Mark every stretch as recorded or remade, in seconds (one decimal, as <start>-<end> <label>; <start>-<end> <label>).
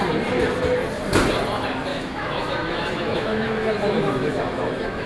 0.0-1.9 recorded; 1.9-5.1 remade